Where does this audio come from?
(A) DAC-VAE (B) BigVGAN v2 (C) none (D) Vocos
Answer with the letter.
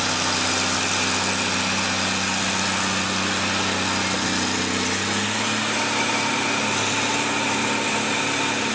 C